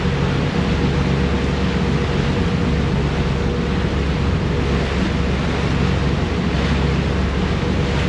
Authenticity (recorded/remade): recorded